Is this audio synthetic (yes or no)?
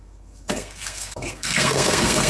yes